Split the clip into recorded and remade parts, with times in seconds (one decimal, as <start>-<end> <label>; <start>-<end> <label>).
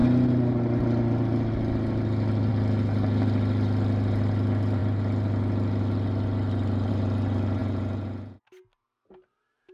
0.0-7.6 recorded; 7.6-8.4 remade; 8.4-9.7 recorded